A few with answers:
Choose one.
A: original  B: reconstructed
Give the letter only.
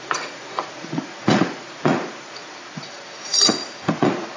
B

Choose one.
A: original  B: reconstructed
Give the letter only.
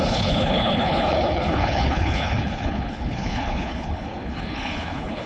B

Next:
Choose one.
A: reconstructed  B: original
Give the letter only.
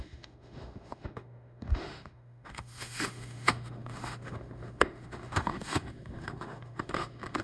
A